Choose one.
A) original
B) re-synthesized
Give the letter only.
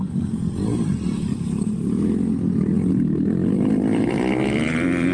A